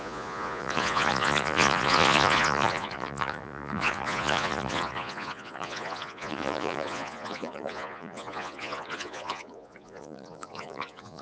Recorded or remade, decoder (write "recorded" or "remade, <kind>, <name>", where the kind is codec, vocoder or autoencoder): remade, vocoder, Vocos